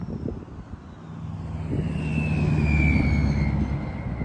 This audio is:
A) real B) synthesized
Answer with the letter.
A